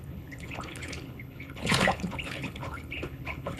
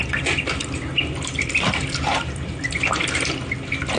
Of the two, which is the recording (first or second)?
second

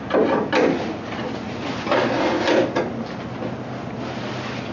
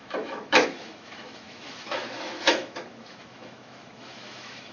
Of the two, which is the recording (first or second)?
first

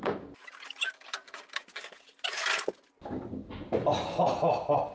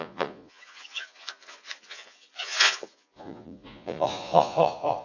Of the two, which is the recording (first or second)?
first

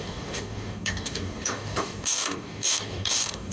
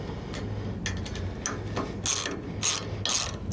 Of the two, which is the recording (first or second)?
second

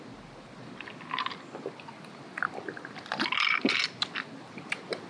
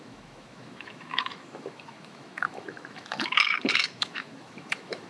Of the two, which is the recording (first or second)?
first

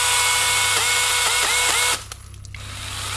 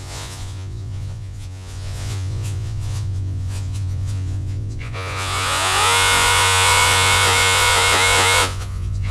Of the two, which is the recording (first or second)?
first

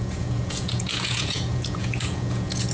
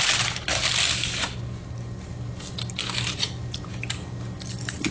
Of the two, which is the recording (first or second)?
second